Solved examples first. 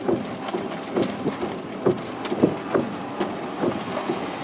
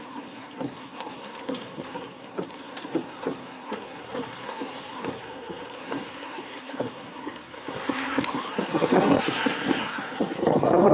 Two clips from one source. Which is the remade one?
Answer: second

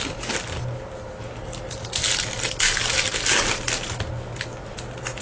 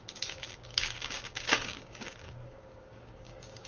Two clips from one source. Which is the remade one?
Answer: second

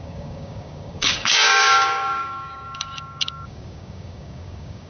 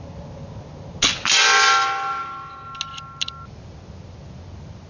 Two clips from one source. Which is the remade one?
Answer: first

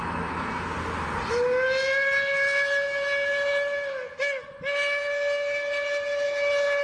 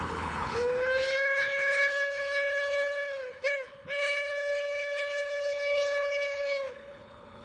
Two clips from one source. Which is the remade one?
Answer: second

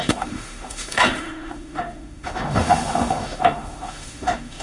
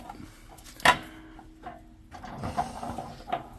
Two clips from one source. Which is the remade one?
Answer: first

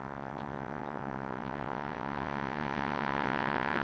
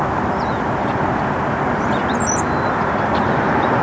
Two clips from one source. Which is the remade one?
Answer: first